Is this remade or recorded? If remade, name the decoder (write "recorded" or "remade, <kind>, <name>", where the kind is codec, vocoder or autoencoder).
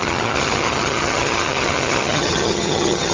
remade, vocoder, HiFi-GAN